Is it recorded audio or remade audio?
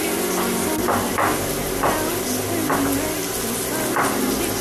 recorded